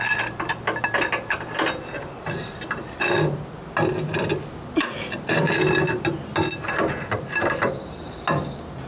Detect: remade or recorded recorded